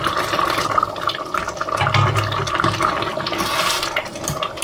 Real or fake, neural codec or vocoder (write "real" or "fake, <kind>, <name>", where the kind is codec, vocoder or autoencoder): real